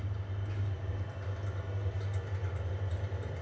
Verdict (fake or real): real